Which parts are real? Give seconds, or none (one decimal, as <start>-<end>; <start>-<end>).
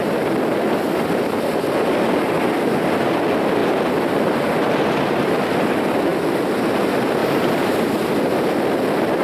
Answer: 0.0-6.1; 6.7-7.2; 8.1-9.2